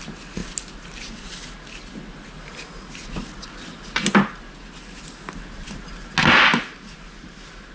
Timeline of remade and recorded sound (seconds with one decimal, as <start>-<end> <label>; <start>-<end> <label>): 0.0-7.7 recorded